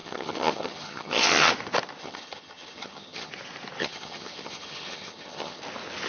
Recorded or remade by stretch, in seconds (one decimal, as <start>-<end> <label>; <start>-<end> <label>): 0.0-1.5 remade; 1.5-2.0 recorded; 2.0-3.3 remade; 3.3-3.8 recorded; 3.8-5.6 remade; 5.6-6.1 recorded